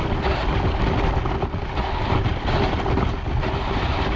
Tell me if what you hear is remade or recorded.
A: recorded